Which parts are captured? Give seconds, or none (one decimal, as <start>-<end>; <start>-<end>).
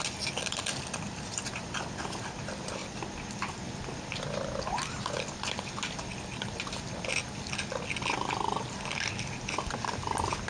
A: 0.0-10.5